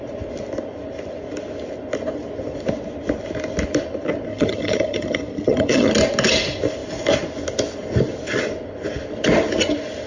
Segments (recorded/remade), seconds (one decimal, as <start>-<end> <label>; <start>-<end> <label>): 0.0-4.3 recorded; 4.3-5.9 remade; 5.9-10.1 recorded